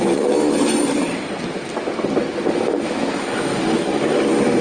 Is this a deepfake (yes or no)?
no